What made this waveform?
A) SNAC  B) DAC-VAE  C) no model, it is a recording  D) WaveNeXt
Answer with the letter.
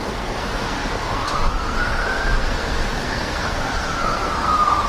A